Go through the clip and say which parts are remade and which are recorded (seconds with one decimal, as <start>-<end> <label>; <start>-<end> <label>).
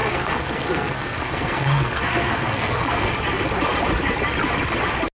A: 0.0-3.1 remade; 3.1-5.1 recorded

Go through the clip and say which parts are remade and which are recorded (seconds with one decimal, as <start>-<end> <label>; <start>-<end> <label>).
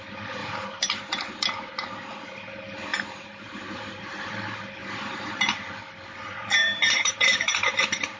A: 0.0-0.4 recorded; 0.4-1.3 remade; 1.3-2.9 recorded; 2.9-4.3 remade; 4.3-4.8 recorded; 4.8-5.3 remade; 5.3-6.6 recorded; 6.6-7.5 remade; 7.5-8.2 recorded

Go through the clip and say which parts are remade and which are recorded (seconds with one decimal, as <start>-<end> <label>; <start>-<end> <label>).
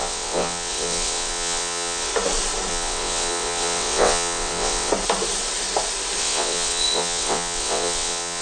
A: 0.0-2.1 remade; 2.1-2.7 recorded; 2.7-4.9 remade; 4.9-6.2 recorded; 6.2-8.4 remade